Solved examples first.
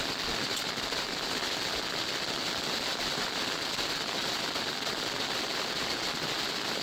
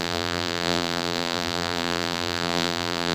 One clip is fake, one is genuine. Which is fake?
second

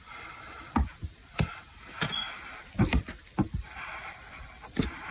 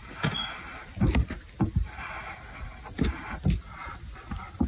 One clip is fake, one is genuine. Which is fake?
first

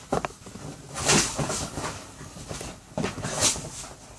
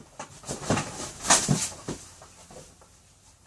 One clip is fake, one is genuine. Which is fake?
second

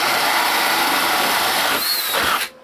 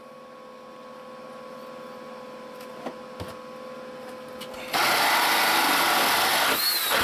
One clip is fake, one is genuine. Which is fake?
first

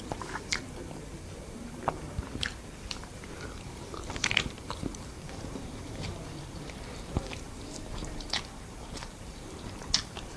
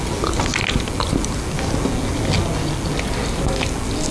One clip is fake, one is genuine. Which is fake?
first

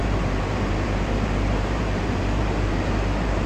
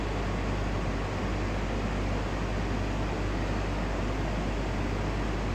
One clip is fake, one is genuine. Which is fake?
first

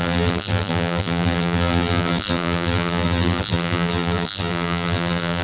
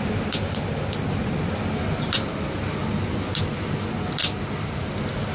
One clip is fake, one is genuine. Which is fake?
first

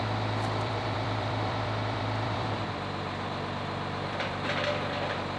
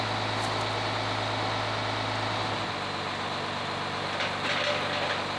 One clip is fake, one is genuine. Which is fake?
first